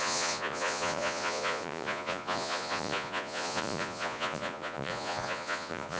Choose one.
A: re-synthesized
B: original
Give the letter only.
A